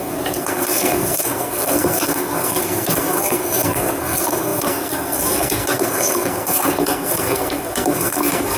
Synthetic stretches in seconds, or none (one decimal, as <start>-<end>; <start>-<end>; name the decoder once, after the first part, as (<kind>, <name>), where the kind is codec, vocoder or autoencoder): 0.0-8.6 (codec, SNAC)